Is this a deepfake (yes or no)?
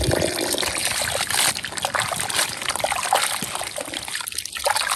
no